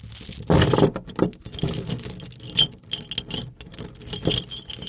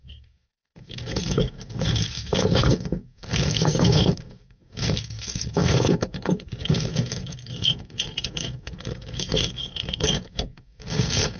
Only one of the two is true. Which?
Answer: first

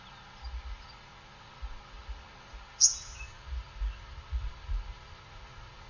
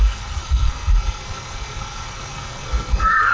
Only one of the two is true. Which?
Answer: first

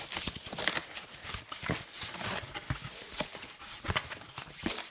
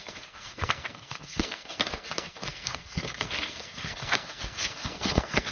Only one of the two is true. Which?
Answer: first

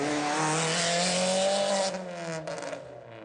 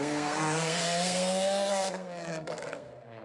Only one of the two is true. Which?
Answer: first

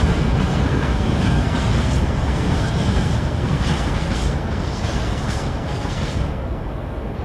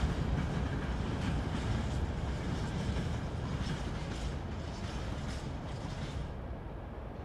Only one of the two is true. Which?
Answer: second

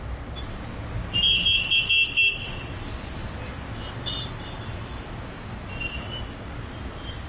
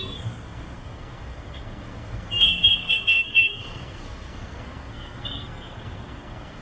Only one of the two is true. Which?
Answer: first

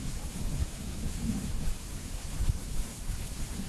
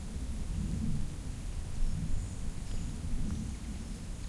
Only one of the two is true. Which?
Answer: second